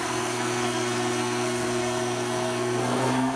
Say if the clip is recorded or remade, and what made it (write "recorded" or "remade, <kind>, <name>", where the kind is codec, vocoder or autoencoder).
remade, codec, SNAC